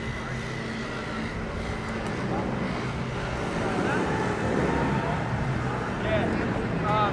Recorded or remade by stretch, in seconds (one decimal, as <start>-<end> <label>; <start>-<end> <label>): 0.0-7.1 recorded